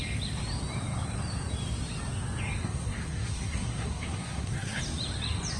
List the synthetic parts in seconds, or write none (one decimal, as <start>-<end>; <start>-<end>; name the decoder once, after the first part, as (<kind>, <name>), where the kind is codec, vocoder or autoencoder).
2.6-4.8 (codec, SNAC)